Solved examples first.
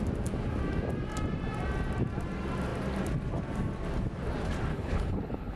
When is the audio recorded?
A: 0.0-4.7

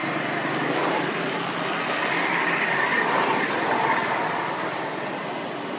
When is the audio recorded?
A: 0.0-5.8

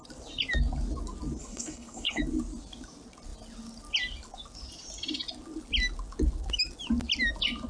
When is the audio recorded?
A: 0.0-1.4; 2.2-7.7

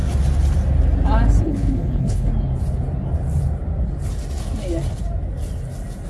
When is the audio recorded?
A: 0.0-1.4; 2.3-6.1